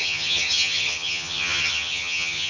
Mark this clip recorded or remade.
remade